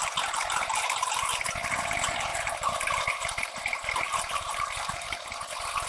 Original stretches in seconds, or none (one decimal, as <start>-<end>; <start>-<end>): 1.4-2.3; 5.2-5.9